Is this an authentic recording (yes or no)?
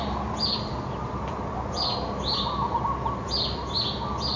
yes